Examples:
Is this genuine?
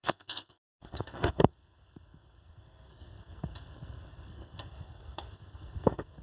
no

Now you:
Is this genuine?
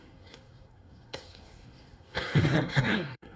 no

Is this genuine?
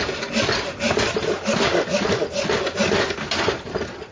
yes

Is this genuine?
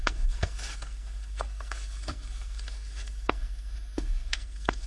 no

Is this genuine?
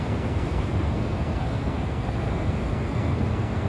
no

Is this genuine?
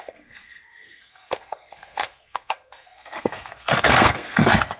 no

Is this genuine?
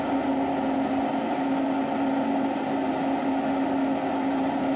yes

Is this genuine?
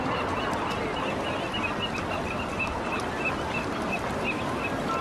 yes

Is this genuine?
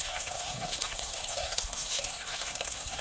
no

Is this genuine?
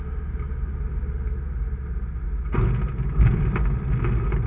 yes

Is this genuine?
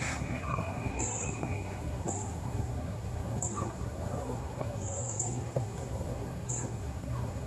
no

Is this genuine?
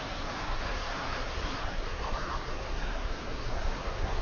no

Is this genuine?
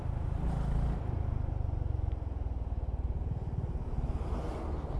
yes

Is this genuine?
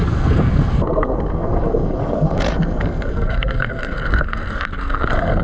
no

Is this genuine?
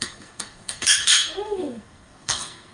no